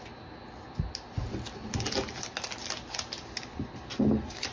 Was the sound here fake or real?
real